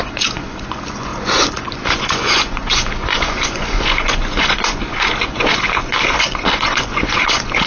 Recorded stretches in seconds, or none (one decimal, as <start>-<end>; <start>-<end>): none